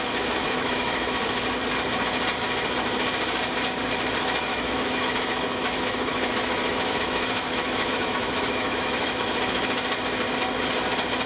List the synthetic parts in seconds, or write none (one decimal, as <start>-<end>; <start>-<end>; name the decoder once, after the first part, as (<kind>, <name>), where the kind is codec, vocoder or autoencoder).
0.4-1.2 (autoencoder, DAC-VAE); 4.5-9.2